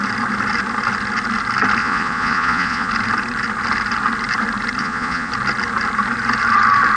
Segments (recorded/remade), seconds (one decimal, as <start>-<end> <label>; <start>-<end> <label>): 0.0-1.8 recorded; 1.8-2.9 remade; 2.9-4.8 recorded; 4.8-5.3 remade; 5.3-7.0 recorded